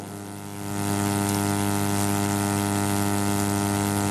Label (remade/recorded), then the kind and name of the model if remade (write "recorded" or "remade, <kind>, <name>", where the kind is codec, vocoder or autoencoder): recorded